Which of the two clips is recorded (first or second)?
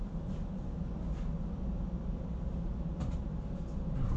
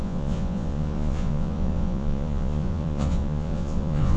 first